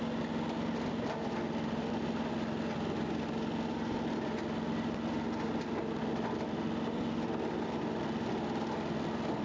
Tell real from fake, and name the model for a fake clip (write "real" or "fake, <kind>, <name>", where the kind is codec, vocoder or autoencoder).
real